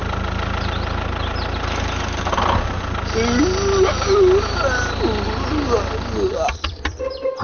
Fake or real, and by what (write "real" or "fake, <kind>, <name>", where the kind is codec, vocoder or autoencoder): real